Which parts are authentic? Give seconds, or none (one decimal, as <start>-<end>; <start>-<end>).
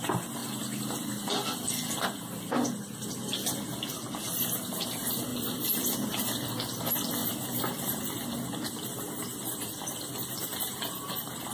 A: 0.0-5.3; 6.5-7.2; 11.1-11.5